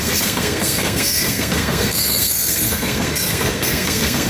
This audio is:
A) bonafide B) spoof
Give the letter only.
B